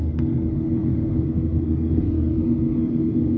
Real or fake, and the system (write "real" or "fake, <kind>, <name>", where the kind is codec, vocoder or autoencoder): fake, codec, SNAC